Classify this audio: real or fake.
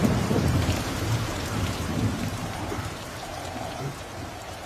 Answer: fake